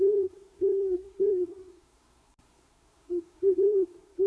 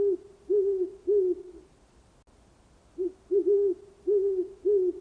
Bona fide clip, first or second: second